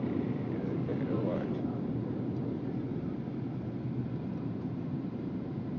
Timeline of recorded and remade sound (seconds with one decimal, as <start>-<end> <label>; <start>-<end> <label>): 0.0-0.9 remade; 0.9-4.4 recorded; 4.4-5.8 remade